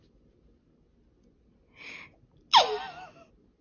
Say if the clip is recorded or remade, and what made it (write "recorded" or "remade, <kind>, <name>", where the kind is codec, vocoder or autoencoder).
recorded